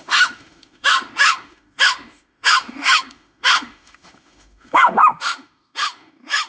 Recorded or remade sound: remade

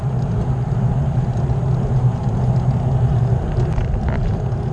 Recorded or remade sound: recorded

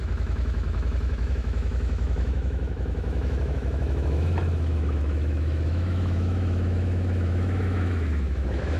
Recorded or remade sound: remade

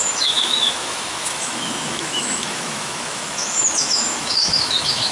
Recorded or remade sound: remade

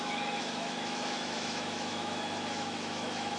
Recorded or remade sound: remade